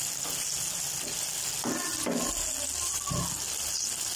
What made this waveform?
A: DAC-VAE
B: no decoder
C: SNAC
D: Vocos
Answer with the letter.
B